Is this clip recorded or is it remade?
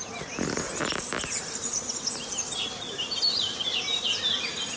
recorded